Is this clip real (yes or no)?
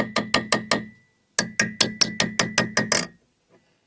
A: yes